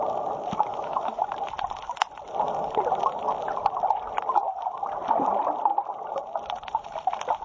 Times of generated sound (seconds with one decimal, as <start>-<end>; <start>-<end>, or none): 0.7-1.2